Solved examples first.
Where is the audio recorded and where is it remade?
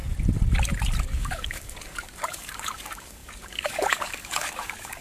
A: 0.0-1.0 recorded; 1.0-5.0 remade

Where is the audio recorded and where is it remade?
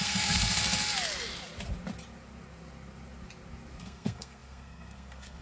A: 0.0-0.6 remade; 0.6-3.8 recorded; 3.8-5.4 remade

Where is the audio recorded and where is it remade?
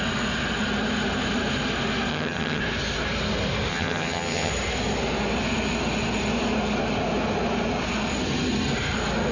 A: 0.0-2.1 recorded; 2.1-2.6 remade; 2.6-3.7 recorded; 3.7-4.5 remade; 4.5-9.3 recorded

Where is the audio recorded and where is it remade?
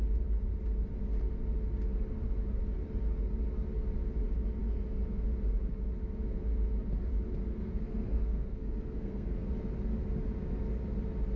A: 0.0-7.5 recorded; 7.5-9.5 remade; 9.5-11.4 recorded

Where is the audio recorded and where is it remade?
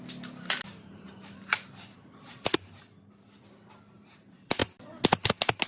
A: 0.0-5.7 recorded